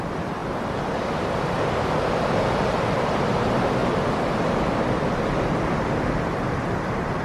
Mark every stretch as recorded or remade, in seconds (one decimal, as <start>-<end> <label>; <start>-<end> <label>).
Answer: 0.0-7.2 recorded